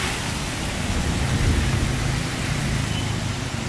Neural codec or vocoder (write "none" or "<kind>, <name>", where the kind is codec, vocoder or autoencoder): none